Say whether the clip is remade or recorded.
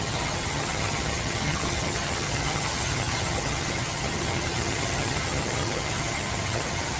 remade